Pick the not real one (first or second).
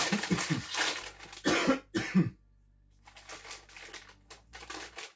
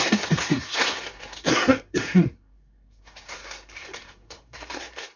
second